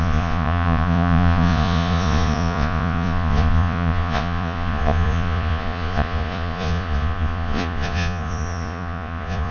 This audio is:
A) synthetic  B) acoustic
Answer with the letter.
A